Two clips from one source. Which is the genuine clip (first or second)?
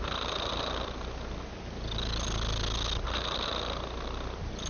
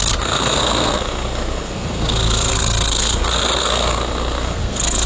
first